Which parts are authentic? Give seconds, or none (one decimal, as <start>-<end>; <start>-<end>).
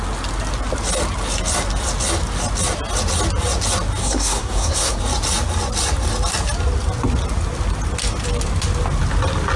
0.0-4.0; 5.0-9.6